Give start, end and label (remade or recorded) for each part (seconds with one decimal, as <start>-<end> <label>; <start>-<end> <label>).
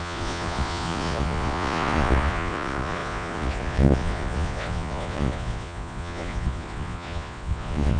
0.0-8.0 remade